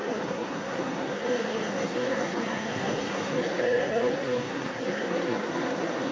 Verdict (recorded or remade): remade